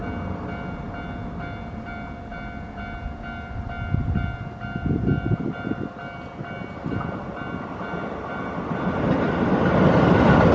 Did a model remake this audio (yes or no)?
no